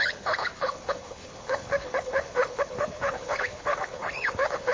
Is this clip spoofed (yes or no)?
yes